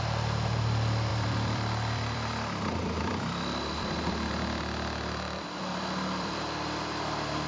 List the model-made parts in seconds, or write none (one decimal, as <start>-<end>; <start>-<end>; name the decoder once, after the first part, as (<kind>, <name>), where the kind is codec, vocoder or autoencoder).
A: 0.0-7.5 (vocoder, BigVGAN v2)